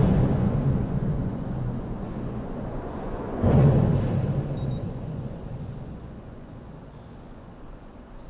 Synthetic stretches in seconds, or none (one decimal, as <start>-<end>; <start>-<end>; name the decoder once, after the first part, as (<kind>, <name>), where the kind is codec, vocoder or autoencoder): 0.0-3.9 (vocoder, Vocos); 4.8-8.3